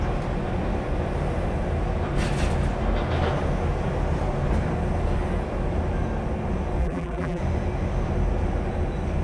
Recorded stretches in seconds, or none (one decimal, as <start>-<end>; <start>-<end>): 0.0-6.8; 7.4-9.2